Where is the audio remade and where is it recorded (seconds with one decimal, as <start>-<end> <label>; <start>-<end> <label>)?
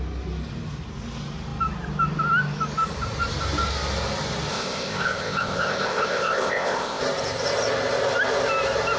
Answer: 0.0-4.5 recorded; 4.5-7.0 remade; 7.0-9.0 recorded